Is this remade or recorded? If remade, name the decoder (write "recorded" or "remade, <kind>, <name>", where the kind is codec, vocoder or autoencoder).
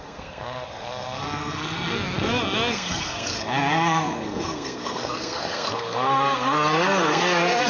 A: remade, codec, SNAC